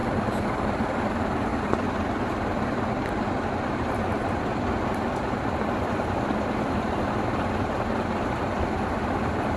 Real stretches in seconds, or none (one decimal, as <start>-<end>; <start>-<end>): 0.0-9.6